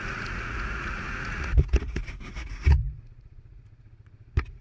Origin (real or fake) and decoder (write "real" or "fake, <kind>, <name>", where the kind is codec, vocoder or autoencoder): fake, vocoder, Vocos